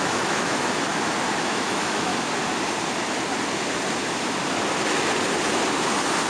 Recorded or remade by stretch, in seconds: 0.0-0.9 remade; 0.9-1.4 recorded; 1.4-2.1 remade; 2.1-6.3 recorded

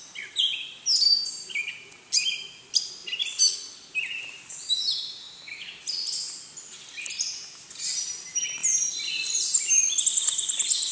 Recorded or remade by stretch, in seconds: 0.0-5.2 recorded; 5.2-5.8 remade; 5.8-10.9 recorded

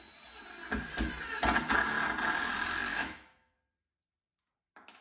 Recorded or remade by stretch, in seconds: 0.0-2.9 recorded; 2.9-3.6 remade; 3.6-5.0 recorded

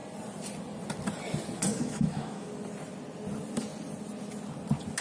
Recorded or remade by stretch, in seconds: 0.0-1.7 recorded; 1.7-2.5 remade; 2.5-5.0 recorded